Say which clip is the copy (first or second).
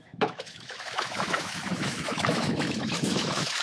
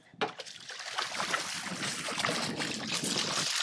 first